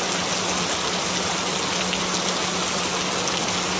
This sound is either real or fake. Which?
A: real